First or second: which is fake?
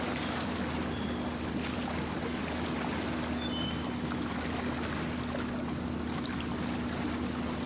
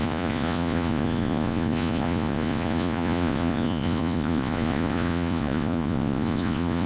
second